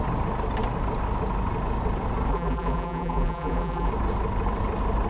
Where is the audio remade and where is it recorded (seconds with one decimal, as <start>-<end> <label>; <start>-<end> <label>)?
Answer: 0.0-2.3 recorded; 2.3-3.9 remade; 3.9-5.1 recorded